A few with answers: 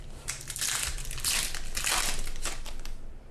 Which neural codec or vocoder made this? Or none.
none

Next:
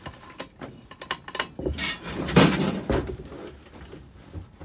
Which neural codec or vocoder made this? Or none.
none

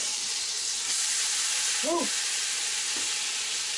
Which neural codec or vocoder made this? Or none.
vocoder, BigVGAN v2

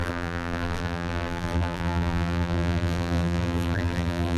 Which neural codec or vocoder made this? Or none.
vocoder, BigVGAN v2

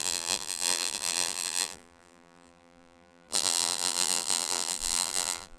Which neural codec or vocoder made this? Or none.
vocoder, BigVGAN v2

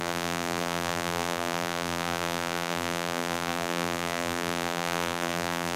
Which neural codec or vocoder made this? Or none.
vocoder, BigVGAN v2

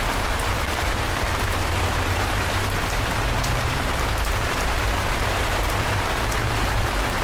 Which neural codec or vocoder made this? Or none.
vocoder, BigVGAN v2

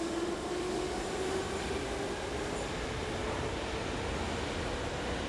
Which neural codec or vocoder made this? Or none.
none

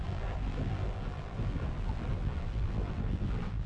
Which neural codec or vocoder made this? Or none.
vocoder, BigVGAN v2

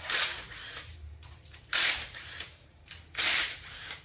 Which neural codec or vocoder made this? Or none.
vocoder, BigVGAN v2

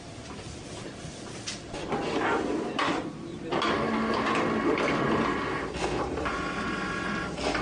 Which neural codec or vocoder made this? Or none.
none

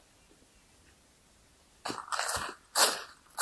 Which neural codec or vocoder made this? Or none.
none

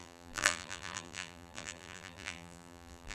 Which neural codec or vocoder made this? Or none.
vocoder, BigVGAN v2